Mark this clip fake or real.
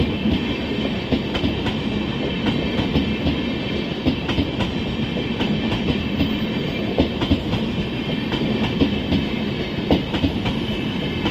real